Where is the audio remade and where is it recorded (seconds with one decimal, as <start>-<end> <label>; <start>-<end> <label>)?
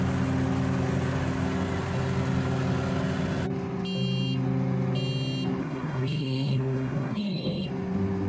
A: 0.0-5.6 recorded; 5.6-7.7 remade; 7.7-8.3 recorded